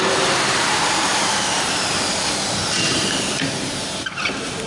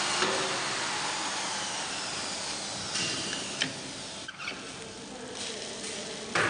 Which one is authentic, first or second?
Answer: second